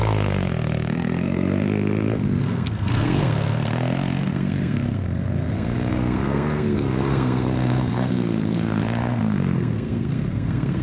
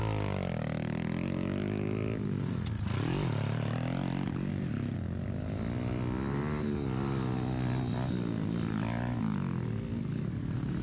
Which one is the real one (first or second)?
second